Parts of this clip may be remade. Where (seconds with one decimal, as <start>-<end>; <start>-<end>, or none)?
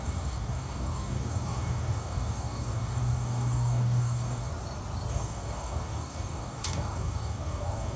0.0-4.5; 5.1-8.0